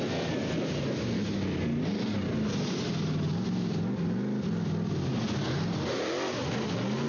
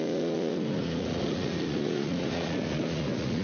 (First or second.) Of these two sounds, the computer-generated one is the second